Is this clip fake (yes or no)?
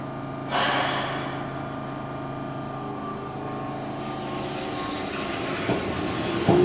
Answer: no